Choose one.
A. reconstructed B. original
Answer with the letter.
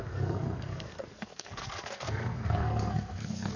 A